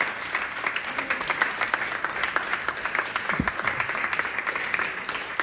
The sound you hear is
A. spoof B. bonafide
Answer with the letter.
B